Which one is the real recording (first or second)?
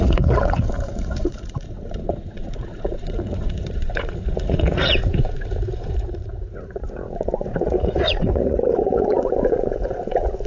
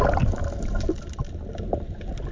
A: second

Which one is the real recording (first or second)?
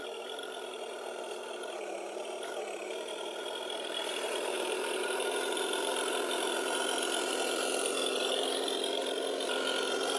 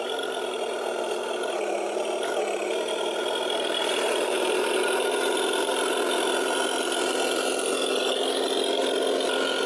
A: second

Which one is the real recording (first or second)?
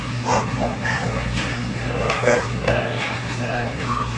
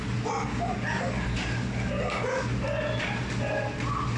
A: second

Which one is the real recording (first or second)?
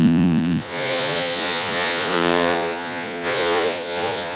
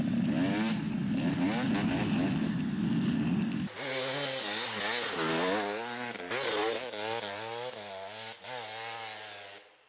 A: second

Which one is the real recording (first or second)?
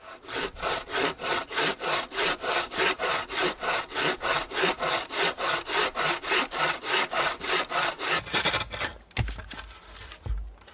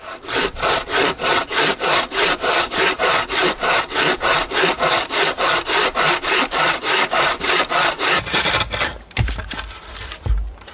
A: first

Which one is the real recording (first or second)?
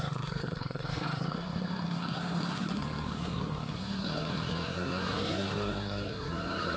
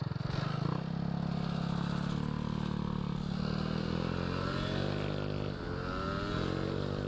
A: second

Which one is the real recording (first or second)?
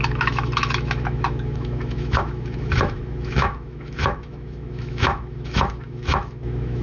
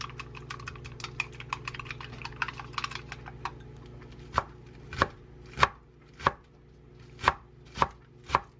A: second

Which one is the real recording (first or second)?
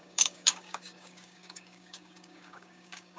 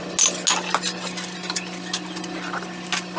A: second